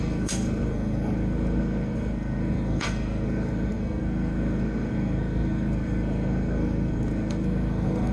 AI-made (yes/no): yes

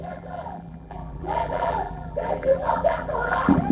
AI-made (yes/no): yes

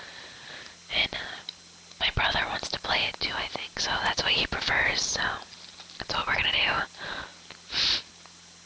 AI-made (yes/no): no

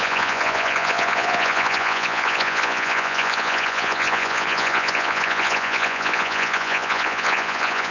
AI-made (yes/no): yes